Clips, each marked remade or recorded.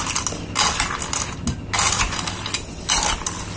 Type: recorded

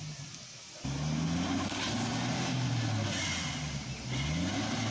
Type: recorded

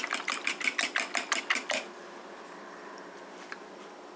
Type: recorded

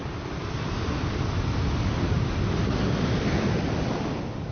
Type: recorded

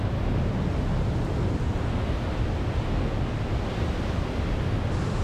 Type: recorded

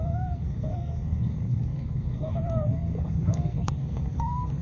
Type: remade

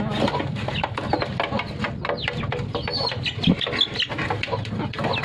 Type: recorded